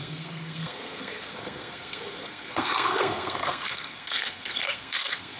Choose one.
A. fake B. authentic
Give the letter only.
A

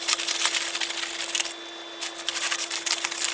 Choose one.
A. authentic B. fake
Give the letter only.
A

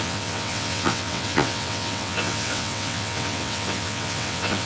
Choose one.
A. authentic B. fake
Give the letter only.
B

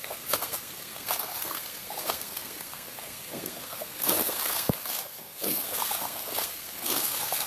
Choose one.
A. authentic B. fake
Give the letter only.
B